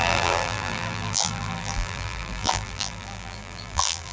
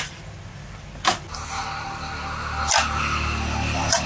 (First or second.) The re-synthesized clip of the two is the first